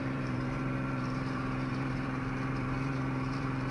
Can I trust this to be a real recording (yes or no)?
no